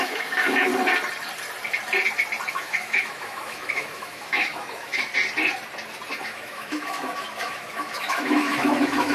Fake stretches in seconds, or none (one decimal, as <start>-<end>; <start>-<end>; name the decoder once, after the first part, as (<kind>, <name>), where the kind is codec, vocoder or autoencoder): 0.0-0.7 (autoencoder, DAC-VAE); 2.5-5.1; 6.1-9.1

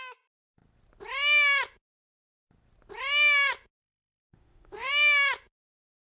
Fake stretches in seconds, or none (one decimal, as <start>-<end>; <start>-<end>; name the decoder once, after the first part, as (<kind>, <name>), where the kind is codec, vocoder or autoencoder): 3.8-4.9 (autoencoder, DAC-VAE)

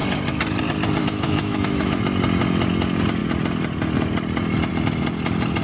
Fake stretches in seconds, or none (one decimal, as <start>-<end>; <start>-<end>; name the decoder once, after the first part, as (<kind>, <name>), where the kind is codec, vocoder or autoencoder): 1.0-2.0 (autoencoder, DAC-VAE)

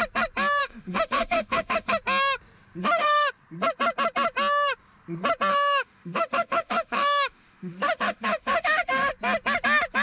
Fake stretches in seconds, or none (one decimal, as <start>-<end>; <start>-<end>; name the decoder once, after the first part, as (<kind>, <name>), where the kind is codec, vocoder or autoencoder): 0.6-1.9 (autoencoder, DAC-VAE); 2.8-3.3; 5.5-9.1

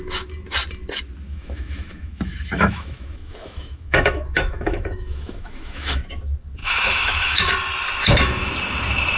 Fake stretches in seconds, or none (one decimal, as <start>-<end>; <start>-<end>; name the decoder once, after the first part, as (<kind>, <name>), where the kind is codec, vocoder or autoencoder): 1.3-6.0 (autoencoder, DAC-VAE); 6.6-7.5; 8.0-8.5

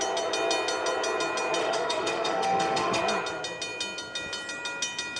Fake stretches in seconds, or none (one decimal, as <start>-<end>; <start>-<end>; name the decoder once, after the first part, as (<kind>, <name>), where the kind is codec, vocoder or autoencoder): 1.6-3.0 (autoencoder, DAC-VAE)